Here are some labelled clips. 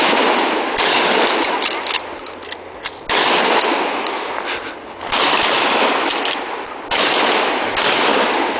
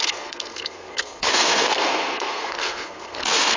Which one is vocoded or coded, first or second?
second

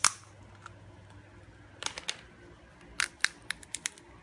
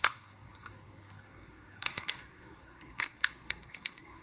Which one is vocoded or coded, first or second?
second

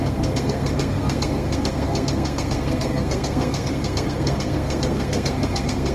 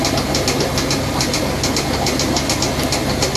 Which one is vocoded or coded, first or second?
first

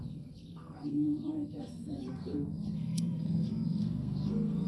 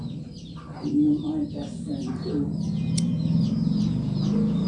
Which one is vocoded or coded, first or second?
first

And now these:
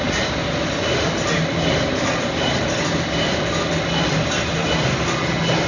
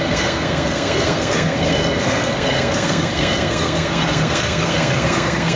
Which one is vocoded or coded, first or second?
second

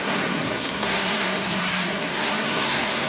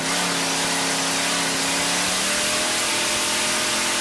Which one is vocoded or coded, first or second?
first